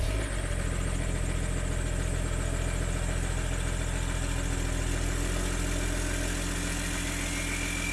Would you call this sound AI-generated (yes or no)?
no